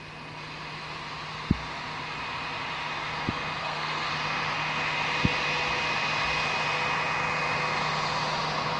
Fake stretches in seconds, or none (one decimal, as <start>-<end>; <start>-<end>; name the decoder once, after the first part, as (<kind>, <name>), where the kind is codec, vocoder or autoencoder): 3.6-4.1 (codec, SNAC)